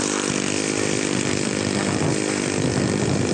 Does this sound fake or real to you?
fake